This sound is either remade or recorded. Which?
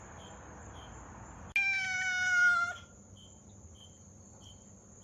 recorded